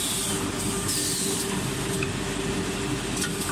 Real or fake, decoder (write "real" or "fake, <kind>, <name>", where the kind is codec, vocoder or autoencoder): real